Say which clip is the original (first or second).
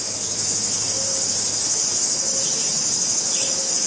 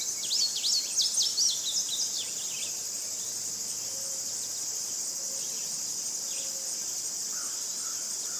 second